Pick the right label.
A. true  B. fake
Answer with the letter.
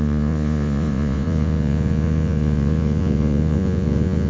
B